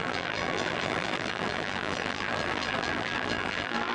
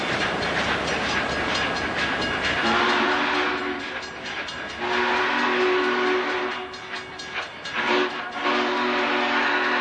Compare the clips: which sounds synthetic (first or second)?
first